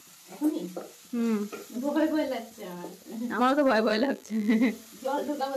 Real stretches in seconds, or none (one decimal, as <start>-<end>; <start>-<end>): 0.0-3.9; 4.5-5.6

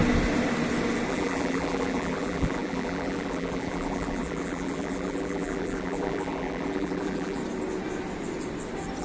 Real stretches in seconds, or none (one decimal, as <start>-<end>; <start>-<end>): 0.0-1.1; 7.4-9.0